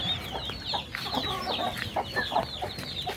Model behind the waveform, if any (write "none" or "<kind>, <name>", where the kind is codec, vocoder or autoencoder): none